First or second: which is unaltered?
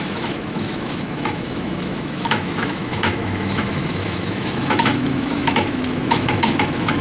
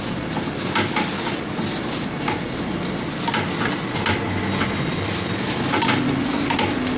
second